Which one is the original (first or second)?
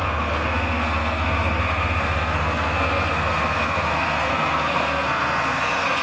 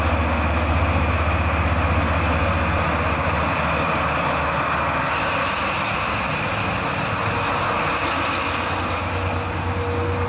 second